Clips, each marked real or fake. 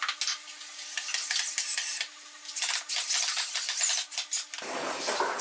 real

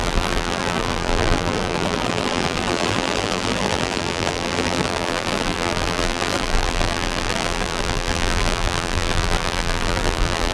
fake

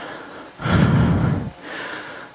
real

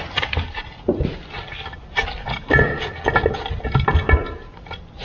real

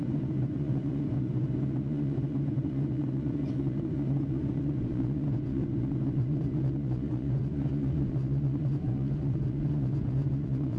fake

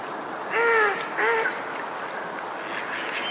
real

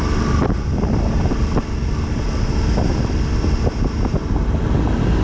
real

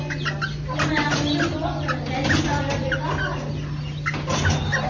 real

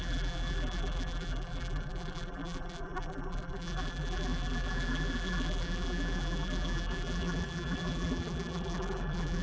fake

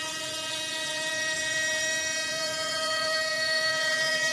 fake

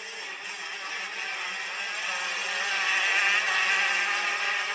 real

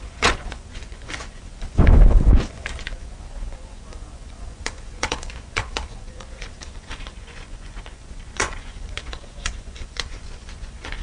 fake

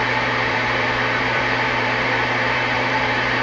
fake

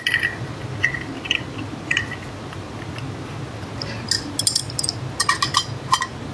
real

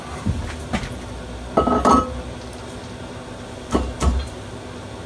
real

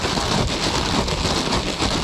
real